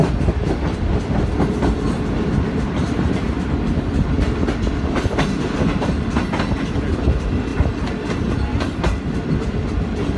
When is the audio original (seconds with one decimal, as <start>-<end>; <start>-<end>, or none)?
0.0-7.5; 8.1-8.5; 9.6-10.2